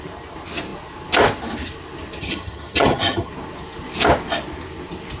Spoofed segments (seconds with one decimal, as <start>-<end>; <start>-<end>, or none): 2.2-3.3